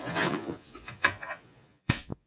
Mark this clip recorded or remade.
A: remade